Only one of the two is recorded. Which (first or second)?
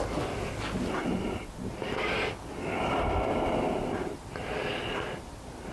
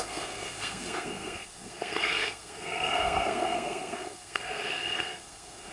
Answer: first